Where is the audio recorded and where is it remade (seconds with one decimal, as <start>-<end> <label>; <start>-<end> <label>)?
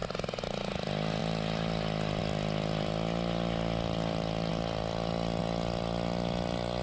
0.0-6.8 recorded